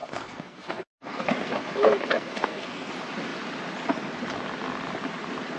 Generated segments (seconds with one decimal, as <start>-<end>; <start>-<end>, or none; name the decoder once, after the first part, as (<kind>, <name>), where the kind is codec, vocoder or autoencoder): 0.0-2.9 (codec, SNAC)